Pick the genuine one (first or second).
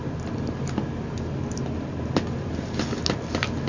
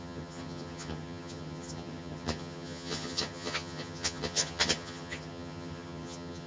first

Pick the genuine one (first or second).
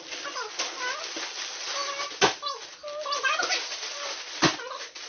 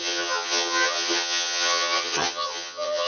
first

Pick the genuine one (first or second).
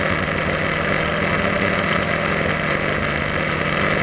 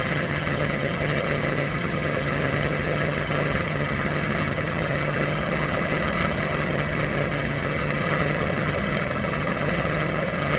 first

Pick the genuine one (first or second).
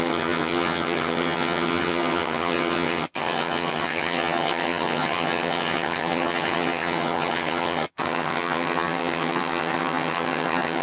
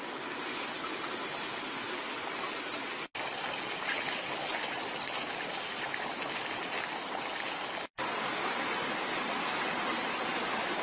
second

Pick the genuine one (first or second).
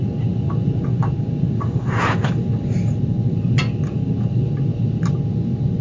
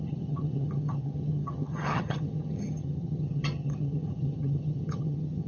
first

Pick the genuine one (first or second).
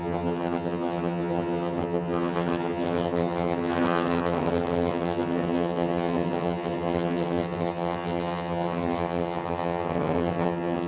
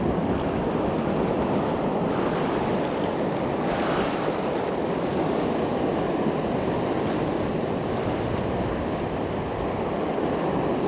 second